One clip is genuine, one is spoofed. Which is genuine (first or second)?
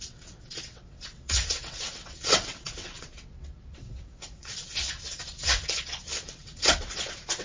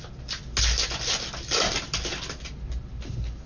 second